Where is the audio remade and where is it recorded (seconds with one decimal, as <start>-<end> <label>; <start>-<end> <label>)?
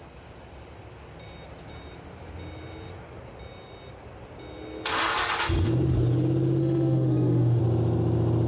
0.0-6.6 recorded; 6.6-7.6 remade; 7.6-8.5 recorded